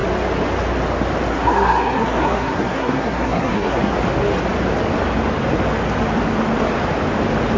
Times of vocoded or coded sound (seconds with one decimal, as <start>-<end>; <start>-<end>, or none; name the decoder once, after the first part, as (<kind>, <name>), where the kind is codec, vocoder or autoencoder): 1.3-3.9 (codec, SNAC)